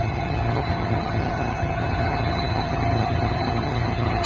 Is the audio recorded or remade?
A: remade